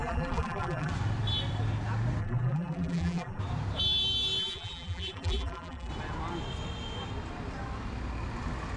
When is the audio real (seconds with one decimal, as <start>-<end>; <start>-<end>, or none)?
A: 0.9-2.2; 3.4-4.4; 5.9-8.8